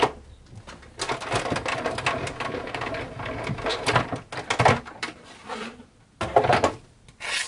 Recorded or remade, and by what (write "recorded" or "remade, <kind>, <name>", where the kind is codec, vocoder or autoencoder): recorded